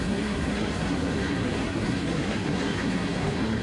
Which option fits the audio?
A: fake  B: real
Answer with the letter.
A